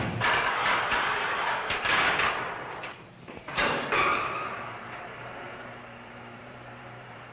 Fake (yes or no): yes